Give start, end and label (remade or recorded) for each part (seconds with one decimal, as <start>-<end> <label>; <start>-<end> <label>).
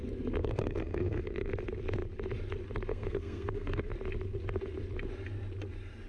0.0-0.4 recorded; 0.4-1.5 remade; 1.5-2.9 recorded; 2.9-3.9 remade; 3.9-6.1 recorded